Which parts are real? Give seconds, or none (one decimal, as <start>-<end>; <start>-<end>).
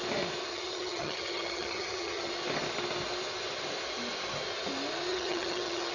0.0-0.5; 2.3-5.1